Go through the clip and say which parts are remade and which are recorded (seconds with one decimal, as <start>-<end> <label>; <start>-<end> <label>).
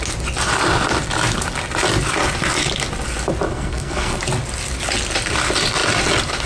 0.0-3.5 recorded; 3.5-4.2 remade; 4.2-6.5 recorded